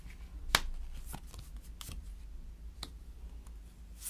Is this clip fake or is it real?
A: real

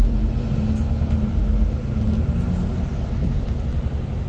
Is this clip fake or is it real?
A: real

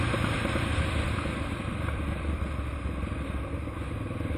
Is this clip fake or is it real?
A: fake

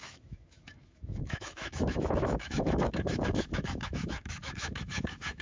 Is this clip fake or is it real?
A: fake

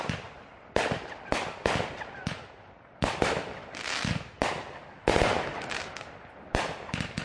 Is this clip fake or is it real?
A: real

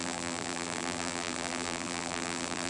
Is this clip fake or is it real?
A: fake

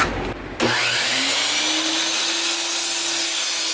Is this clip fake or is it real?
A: real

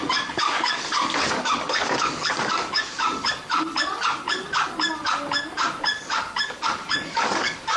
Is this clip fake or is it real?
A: fake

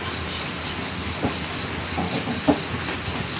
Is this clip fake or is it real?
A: real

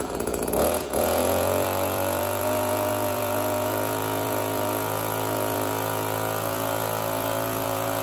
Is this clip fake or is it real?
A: fake